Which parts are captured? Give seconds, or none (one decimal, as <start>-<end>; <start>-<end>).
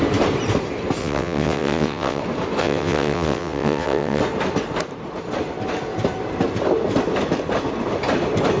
0.0-1.0; 2.2-2.6; 4.2-8.6